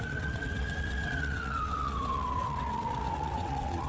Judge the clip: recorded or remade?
remade